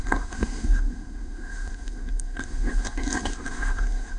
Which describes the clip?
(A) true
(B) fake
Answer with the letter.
B